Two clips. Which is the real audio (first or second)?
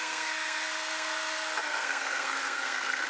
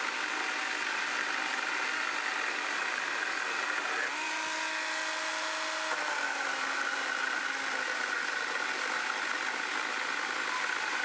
second